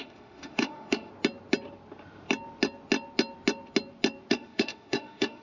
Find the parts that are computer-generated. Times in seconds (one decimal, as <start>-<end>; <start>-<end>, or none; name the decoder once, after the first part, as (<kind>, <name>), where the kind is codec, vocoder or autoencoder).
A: 0.0-1.1 (autoencoder, DAC-VAE); 4.3-5.4